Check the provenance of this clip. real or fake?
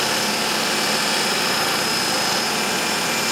real